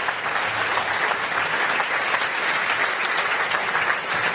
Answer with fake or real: real